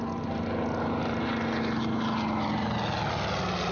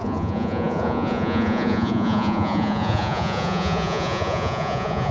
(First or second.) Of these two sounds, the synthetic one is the second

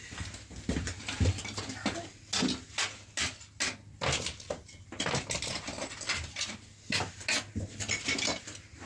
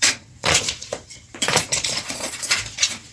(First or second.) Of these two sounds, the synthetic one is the second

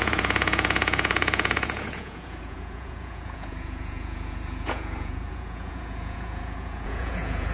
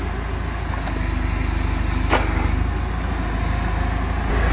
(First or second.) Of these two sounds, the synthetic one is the first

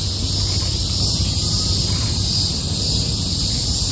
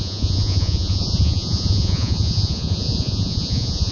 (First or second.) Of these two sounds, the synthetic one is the second